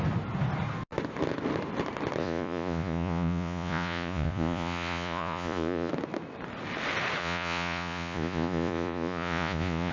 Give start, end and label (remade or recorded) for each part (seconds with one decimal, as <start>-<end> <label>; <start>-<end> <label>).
0.0-2.2 recorded; 2.2-5.9 remade; 5.9-7.2 recorded; 7.2-9.9 remade